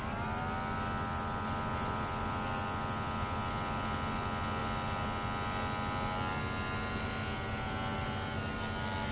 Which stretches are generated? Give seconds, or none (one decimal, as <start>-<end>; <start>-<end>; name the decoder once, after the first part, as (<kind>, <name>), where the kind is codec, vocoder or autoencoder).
none